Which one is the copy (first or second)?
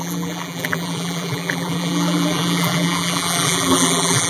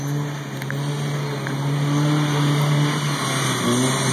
first